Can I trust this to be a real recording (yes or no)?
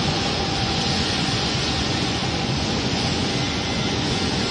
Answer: no